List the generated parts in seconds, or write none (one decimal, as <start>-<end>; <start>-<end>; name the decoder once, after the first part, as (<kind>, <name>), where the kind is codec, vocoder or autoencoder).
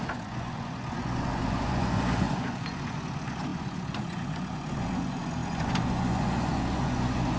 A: 0.0-7.4 (vocoder, Vocos)